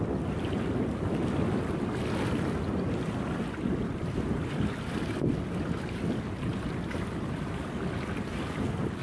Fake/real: real